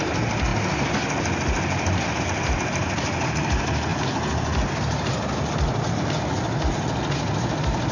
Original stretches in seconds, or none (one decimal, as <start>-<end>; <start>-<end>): 0.5-2.2; 3.9-6.9